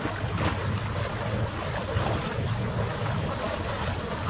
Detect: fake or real real